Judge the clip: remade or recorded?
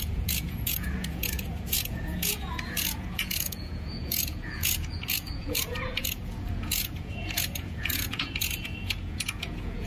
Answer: remade